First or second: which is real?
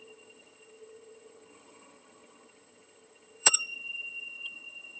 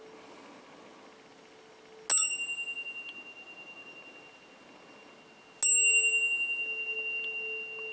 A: second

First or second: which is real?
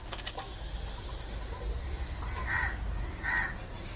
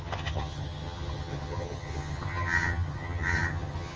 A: first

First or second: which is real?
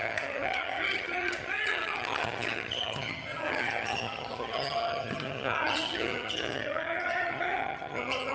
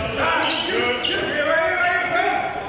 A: second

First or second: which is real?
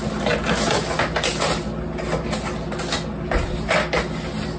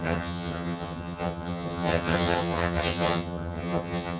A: first